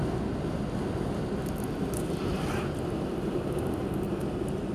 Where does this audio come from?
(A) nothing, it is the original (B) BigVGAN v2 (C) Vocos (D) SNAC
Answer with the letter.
A